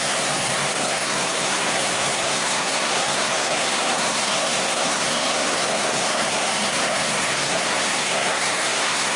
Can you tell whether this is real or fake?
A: fake